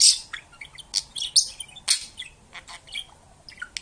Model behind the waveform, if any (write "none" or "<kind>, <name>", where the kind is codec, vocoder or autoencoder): none